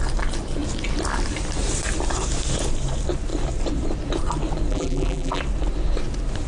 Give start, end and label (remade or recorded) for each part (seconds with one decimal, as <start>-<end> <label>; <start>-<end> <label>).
0.0-4.7 recorded; 4.7-5.4 remade; 5.4-6.5 recorded

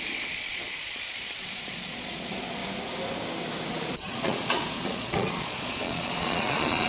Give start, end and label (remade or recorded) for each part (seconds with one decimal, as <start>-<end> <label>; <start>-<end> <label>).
0.0-2.6 remade; 2.6-3.7 recorded; 3.7-6.9 remade